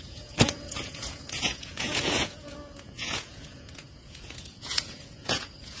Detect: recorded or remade remade